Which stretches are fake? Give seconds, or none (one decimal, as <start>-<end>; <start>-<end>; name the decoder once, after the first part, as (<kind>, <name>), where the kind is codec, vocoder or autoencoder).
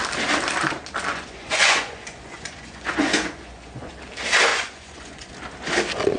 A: 1.1-3.9 (vocoder, Vocos); 4.5-5.3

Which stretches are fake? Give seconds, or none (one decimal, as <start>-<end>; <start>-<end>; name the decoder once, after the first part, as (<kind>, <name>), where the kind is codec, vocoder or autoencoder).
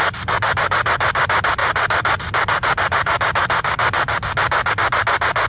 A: none